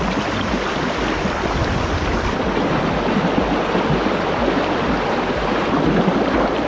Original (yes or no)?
yes